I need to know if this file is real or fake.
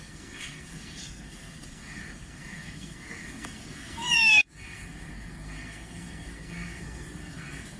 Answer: fake